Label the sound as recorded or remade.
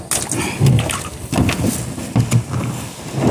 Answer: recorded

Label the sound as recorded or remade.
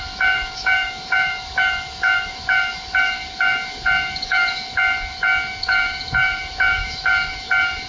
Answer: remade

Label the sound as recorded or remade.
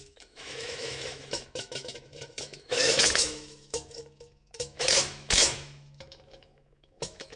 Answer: remade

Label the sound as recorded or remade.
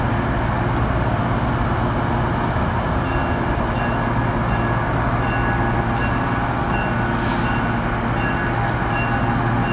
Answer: recorded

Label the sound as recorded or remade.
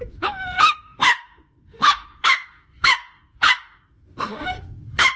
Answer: remade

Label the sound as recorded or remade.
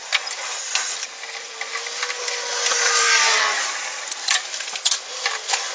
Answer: recorded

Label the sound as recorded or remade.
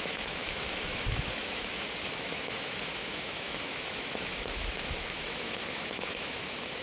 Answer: remade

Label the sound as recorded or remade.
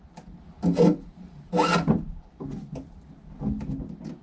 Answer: recorded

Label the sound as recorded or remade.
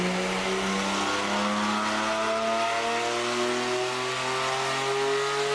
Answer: recorded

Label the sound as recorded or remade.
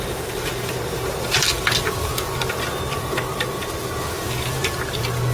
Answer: recorded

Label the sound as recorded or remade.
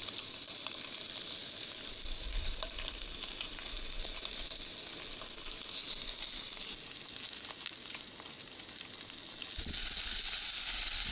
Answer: recorded